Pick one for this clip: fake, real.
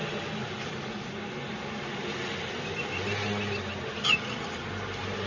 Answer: real